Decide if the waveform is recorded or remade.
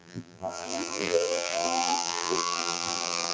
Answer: remade